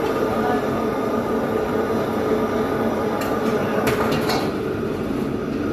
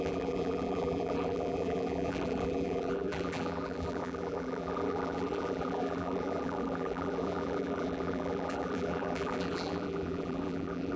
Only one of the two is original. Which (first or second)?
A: first